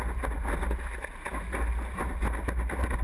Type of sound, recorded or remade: recorded